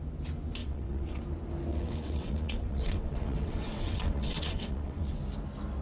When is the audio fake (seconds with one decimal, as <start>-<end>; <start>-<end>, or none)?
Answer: 0.6-1.2; 1.7-5.2